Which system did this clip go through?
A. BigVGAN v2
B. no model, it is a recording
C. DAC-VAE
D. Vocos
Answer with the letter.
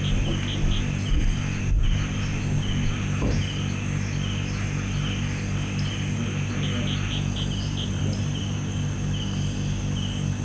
B